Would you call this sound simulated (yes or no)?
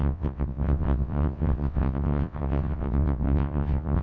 yes